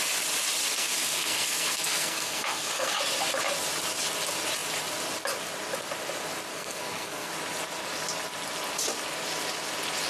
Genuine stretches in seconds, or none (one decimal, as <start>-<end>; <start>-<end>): 0.0-0.6; 3.0-6.5; 7.3-10.1